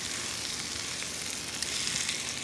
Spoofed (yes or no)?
no